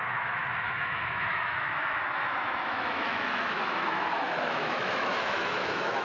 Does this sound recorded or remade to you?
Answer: remade